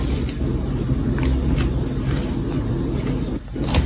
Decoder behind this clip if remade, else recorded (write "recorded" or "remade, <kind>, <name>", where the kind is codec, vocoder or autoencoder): recorded